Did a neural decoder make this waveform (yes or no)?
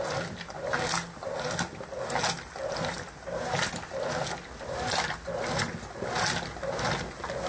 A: no